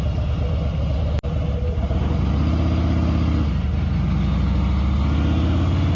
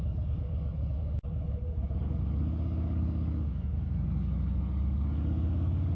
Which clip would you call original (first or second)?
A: first